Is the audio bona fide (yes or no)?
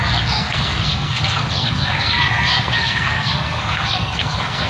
no